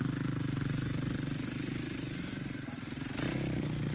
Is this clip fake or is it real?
real